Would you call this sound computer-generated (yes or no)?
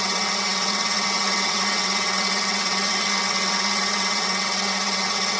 yes